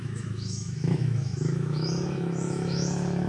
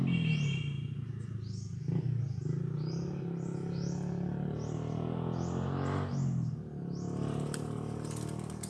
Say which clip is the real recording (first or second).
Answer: second